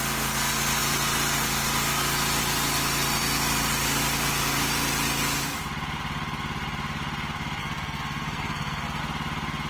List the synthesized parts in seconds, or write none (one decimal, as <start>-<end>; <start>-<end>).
7.6-9.0